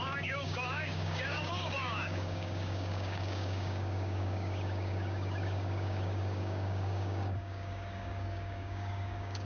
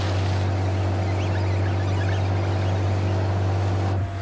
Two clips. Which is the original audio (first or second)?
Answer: second